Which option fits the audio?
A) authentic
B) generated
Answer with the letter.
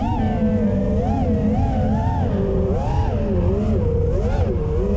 A